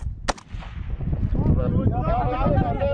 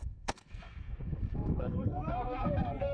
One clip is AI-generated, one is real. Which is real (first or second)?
first